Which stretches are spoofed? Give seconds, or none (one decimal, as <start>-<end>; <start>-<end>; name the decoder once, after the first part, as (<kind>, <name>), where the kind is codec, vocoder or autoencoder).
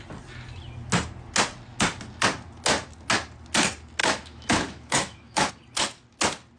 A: 4.0-5.5 (autoencoder, DAC-VAE)